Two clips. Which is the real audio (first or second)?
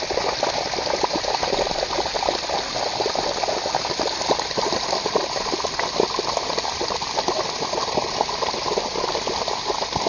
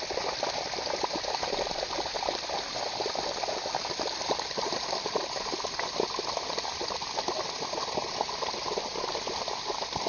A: first